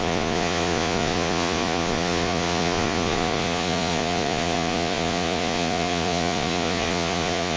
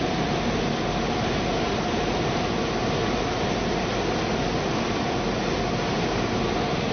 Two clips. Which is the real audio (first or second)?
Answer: second